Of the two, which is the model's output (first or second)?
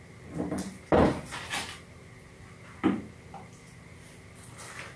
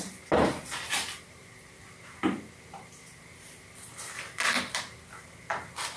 second